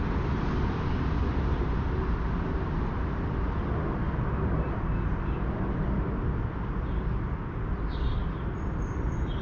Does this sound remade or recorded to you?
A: recorded